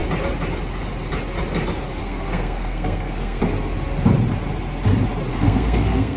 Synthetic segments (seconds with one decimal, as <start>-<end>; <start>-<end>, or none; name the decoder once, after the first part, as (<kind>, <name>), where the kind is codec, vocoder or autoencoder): 2.0-3.4 (codec, SNAC); 5.3-6.2